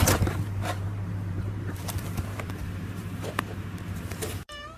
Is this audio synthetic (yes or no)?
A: yes